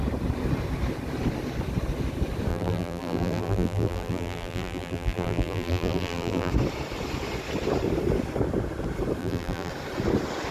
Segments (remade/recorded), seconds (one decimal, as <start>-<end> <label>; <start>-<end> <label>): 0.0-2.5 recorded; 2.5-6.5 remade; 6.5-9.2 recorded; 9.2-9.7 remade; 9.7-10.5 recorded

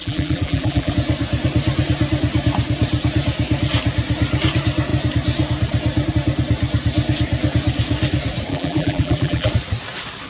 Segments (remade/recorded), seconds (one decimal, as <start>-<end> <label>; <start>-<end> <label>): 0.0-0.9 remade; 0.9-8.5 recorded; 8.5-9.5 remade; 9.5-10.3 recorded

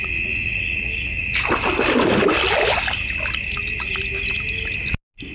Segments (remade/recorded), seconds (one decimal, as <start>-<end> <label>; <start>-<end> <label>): 0.0-5.3 recorded